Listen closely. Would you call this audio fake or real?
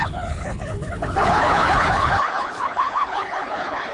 fake